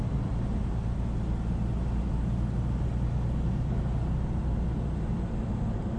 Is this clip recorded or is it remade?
recorded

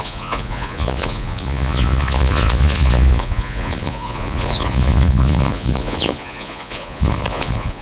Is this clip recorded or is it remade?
remade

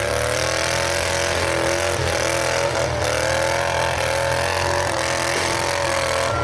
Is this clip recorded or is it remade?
recorded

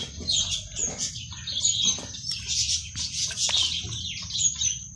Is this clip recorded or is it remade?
recorded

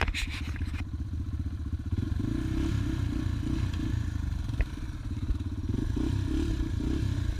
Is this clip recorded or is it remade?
recorded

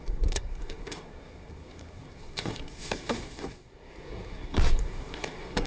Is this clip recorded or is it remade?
remade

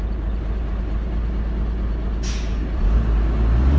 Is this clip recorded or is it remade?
recorded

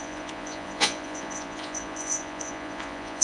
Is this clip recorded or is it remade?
remade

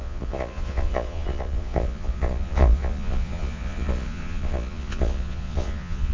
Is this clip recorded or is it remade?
remade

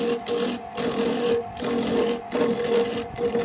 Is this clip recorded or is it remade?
recorded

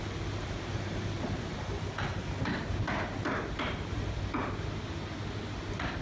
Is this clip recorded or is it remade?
recorded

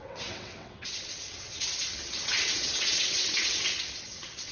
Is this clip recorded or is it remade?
remade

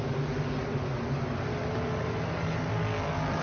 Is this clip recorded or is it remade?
recorded